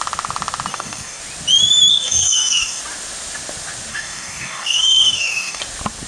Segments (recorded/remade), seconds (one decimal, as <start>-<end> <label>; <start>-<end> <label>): 0.0-0.7 recorded; 0.7-1.2 remade; 1.2-1.9 recorded; 1.9-2.8 remade; 2.8-3.9 recorded; 3.9-5.6 remade; 5.6-6.1 recorded